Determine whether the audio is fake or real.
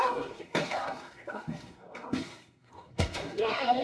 fake